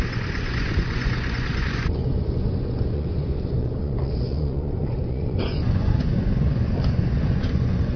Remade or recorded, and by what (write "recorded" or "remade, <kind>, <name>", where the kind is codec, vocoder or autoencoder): remade, vocoder, Vocos